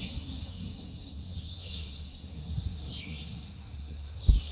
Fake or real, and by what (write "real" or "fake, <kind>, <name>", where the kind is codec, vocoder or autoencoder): fake, codec, SNAC